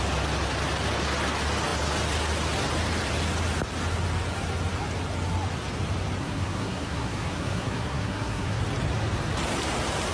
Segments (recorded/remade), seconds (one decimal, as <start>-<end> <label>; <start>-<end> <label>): 0.0-6.2 recorded; 6.2-8.6 remade; 8.6-10.1 recorded